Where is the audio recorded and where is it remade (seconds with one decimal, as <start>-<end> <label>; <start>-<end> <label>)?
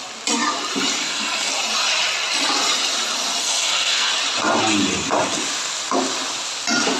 0.0-1.0 recorded; 1.0-1.5 remade; 1.5-3.4 recorded; 3.4-4.1 remade; 4.1-7.0 recorded